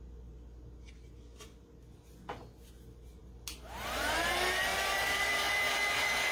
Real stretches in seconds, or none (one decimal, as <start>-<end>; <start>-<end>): 0.0-4.7